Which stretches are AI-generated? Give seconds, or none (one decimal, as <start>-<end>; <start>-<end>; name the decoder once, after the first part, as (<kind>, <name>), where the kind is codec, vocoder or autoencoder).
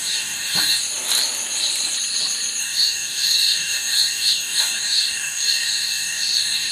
0.0-0.8 (codec, DAC); 2.6-6.7